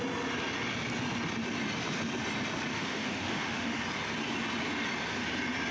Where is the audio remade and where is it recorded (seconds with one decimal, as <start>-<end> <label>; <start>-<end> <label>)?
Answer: 0.0-2.7 recorded; 2.7-3.8 remade; 3.8-5.7 recorded